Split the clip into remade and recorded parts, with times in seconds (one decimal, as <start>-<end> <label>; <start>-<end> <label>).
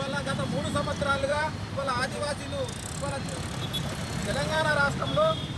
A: 0.0-1.3 recorded; 1.3-2.3 remade; 2.3-4.2 recorded; 4.2-5.6 remade